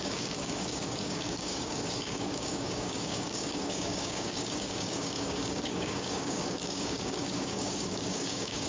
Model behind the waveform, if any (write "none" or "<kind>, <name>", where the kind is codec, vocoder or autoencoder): codec, DAC